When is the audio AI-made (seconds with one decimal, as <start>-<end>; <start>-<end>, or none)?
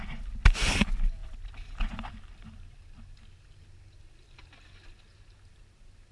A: none